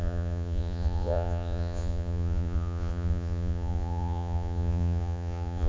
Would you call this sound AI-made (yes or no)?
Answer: yes